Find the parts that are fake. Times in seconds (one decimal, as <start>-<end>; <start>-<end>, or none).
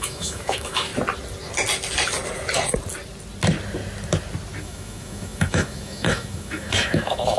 0.0-0.9; 4.6-7.4